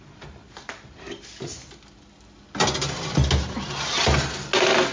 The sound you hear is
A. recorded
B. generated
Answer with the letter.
A